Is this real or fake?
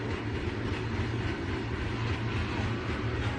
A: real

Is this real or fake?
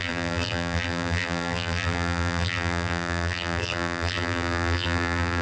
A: fake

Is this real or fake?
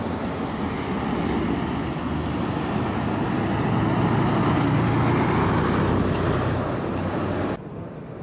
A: real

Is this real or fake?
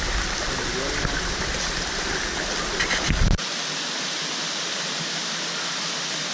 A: real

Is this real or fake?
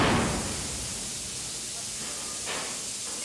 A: real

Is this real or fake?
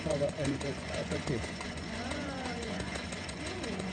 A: fake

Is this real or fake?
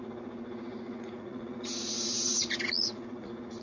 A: fake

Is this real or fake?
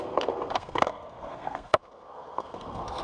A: fake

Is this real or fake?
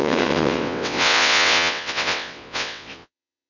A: fake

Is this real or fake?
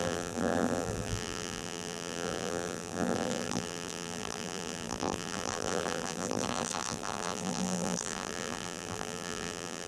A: fake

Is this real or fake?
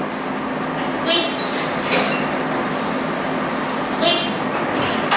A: real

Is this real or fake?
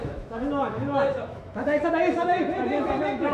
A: fake